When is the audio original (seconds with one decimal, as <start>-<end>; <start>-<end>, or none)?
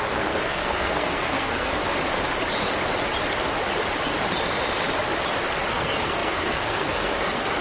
1.8-5.7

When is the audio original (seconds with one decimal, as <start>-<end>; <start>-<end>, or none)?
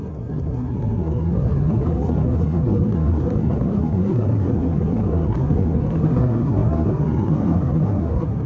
none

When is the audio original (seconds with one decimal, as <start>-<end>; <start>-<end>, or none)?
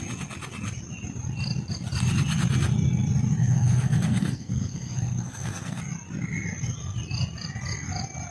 0.0-3.4; 5.8-8.3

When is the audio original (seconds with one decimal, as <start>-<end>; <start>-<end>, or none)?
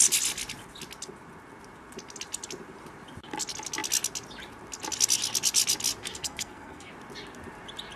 0.0-6.0; 6.9-8.0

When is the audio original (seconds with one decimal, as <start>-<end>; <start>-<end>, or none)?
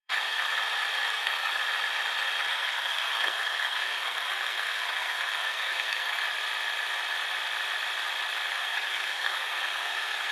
0.5-1.1; 1.6-2.5; 6.2-8.5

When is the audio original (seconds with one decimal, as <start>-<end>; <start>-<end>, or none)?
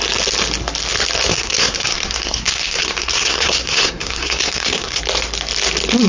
0.0-1.3; 5.0-6.1